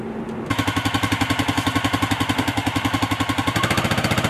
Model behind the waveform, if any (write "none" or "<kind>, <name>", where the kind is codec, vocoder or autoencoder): none